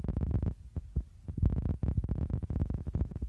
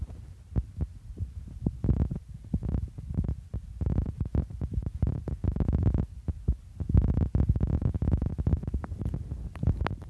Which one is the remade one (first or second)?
second